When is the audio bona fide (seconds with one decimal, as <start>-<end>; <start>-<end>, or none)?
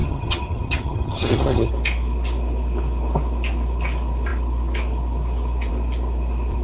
1.7-6.6